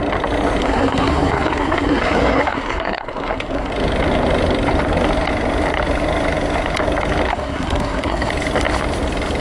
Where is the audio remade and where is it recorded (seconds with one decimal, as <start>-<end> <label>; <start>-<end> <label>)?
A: 0.0-0.6 recorded; 0.6-3.7 remade; 3.7-7.3 recorded; 7.3-8.3 remade; 8.3-9.4 recorded